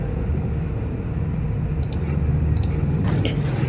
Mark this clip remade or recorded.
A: recorded